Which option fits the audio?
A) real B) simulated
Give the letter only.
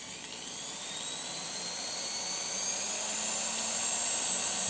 A